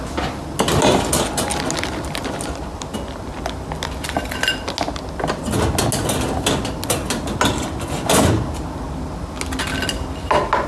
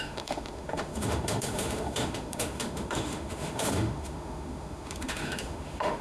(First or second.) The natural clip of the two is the first